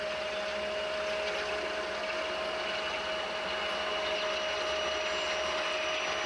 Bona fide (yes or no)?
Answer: yes